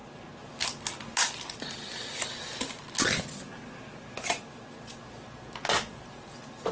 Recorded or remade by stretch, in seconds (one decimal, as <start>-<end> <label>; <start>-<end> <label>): 0.0-6.7 recorded